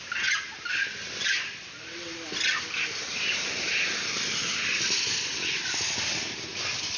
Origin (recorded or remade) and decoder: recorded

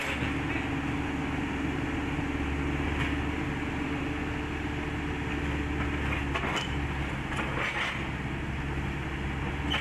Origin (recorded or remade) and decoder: recorded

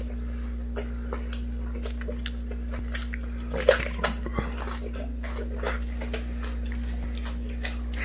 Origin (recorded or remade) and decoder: recorded